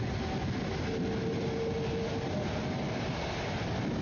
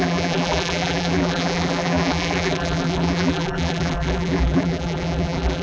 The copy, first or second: second